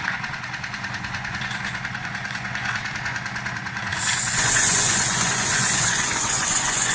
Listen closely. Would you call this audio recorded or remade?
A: remade